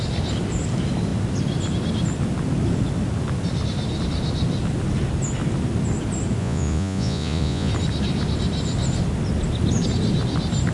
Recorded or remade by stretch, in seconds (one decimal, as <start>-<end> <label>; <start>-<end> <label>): 0.0-6.4 recorded; 6.4-7.7 remade; 7.7-10.7 recorded